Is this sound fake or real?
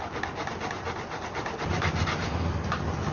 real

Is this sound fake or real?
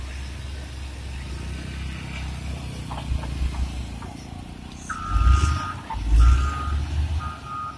real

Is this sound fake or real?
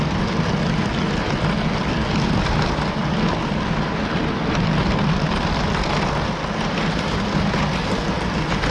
real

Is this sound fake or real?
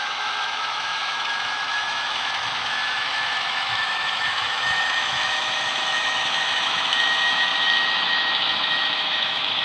fake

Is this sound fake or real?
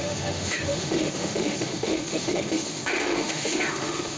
fake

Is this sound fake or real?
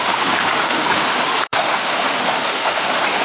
fake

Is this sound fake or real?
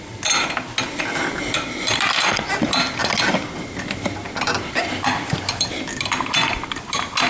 real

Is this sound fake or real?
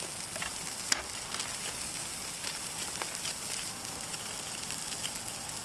real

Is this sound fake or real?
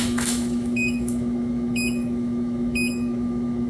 fake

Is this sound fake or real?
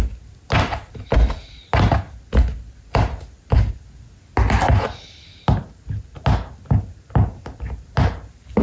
real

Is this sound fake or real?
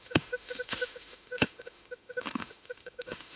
fake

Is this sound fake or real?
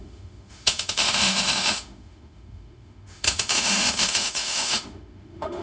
fake